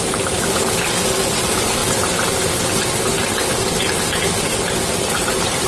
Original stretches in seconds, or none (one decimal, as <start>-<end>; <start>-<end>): 0.0-5.7